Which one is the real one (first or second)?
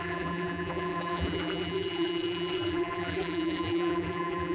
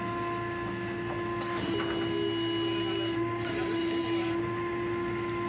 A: second